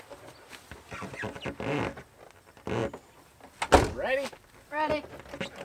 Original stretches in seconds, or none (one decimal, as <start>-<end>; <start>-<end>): 0.0-5.6